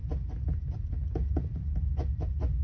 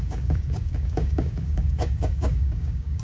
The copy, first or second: second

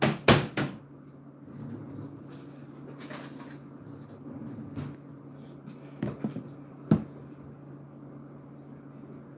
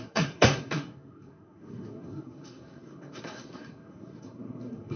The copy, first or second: second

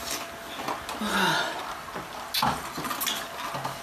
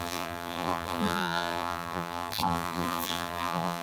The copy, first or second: second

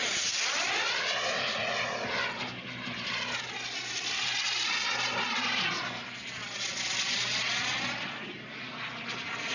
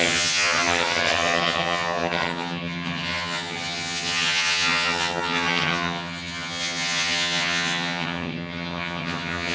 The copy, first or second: second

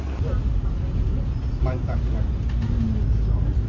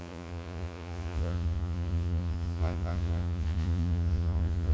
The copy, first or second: second